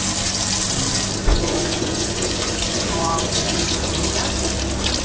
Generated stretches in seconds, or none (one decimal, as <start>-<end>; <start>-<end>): 1.3-3.9